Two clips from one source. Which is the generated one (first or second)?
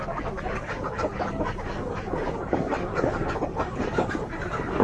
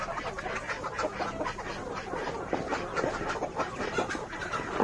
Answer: first